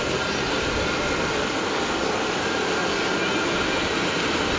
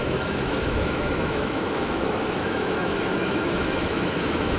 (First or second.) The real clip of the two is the first